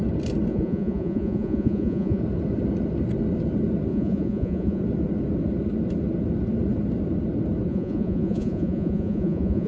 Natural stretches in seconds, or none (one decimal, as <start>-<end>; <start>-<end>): 0.0-0.5; 2.2-3.9; 4.8-7.7